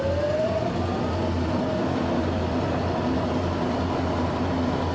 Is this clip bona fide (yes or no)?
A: yes